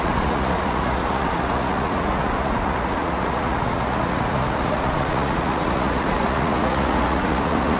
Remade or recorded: remade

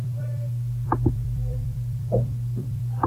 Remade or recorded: remade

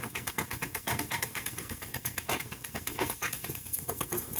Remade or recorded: remade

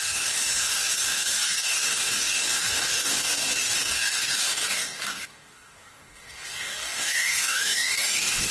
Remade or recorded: remade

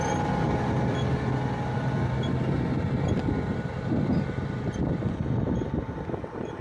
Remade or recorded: recorded